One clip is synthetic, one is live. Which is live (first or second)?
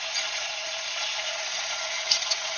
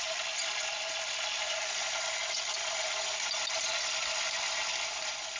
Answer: second